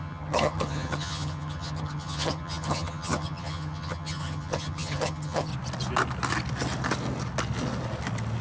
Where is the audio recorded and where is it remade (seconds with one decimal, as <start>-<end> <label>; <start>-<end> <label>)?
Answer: 0.0-5.5 remade; 5.5-8.4 recorded